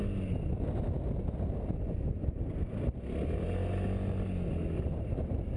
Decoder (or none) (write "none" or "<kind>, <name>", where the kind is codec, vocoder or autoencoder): none